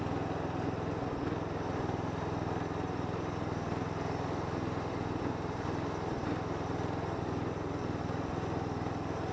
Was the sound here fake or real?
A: real